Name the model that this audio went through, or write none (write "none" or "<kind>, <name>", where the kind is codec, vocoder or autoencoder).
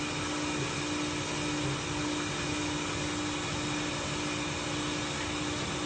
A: none